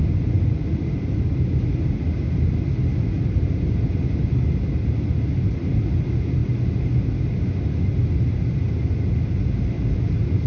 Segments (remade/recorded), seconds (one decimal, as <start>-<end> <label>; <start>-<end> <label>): 0.0-10.5 recorded